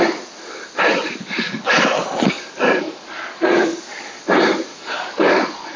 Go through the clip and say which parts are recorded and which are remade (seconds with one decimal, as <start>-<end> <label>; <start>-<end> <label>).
0.0-2.0 recorded; 2.0-4.2 remade; 4.2-4.7 recorded; 4.7-5.8 remade